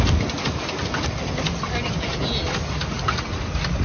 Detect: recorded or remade recorded